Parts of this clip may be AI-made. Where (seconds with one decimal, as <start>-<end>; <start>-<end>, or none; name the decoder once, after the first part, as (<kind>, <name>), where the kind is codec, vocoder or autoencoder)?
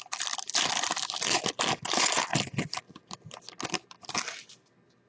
none